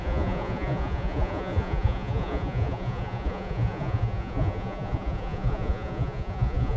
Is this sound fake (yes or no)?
yes